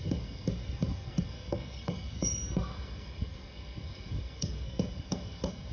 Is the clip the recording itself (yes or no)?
no